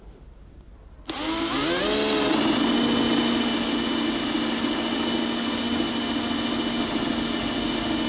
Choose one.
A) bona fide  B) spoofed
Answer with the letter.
A